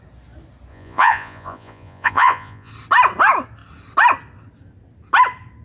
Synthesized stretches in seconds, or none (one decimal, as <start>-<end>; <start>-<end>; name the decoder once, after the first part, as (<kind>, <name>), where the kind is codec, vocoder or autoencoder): 0.7-2.7 (vocoder, Vocos)